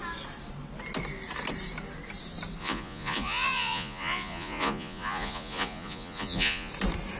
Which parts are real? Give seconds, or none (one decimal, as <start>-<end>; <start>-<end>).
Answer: 0.0-2.6; 6.7-7.2